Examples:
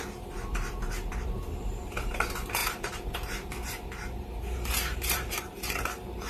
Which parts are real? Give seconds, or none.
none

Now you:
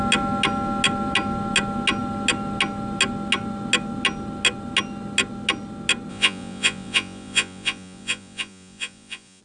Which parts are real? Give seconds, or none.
0.0-6.1

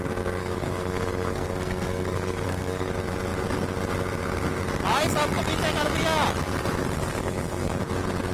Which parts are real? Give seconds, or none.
0.0-0.4; 2.9-7.1; 7.8-8.3

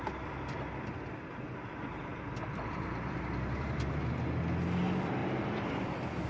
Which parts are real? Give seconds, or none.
0.0-2.1; 3.9-5.2; 5.7-6.3

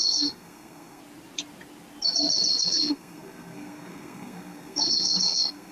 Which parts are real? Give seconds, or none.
1.0-2.6

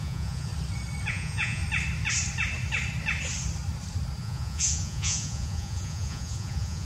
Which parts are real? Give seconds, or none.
0.5-1.1; 1.6-4.2

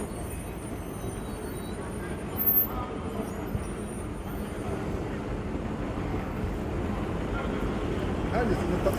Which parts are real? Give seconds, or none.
0.0-6.1; 6.7-9.0